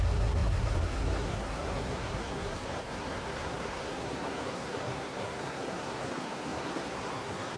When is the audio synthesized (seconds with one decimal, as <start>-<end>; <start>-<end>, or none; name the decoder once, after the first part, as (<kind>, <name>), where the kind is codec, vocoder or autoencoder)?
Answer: 0.0-7.6 (codec, SNAC)